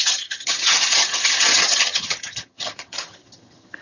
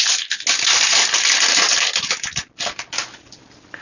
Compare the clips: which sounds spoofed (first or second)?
first